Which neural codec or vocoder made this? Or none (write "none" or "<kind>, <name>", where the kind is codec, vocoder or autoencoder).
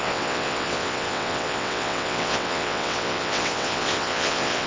vocoder, WaveNeXt